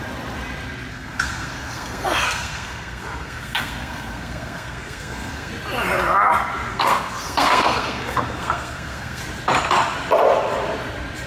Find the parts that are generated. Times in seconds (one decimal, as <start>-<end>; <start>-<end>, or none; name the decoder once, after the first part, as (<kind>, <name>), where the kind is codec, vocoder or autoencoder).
0.9-5.5 (codec, SNAC); 6.7-9.2